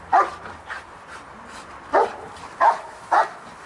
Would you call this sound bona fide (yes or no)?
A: yes